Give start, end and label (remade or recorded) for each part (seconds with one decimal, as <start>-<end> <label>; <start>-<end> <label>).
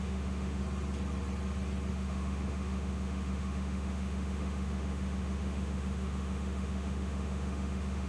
0.0-0.6 remade; 0.6-1.9 recorded; 1.9-8.1 remade